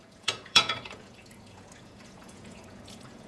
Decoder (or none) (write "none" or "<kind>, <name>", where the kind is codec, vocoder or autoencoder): vocoder, Vocos